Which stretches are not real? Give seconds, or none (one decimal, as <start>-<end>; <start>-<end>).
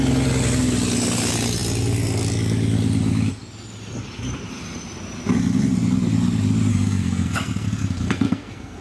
6.7-8.8